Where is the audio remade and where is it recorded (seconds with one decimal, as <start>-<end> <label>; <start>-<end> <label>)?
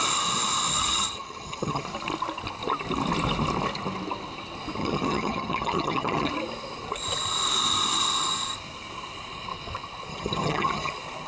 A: 0.0-0.7 recorded; 0.7-1.8 remade; 1.8-4.8 recorded; 4.8-6.3 remade; 6.3-10.1 recorded; 10.1-10.9 remade; 10.9-11.3 recorded